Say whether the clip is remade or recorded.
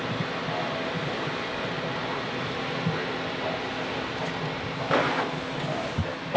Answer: recorded